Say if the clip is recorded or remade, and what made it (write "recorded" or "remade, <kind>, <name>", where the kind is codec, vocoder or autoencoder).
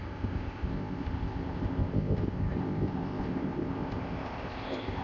remade, codec, ZipCodec